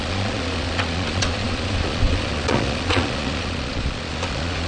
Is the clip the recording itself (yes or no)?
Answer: no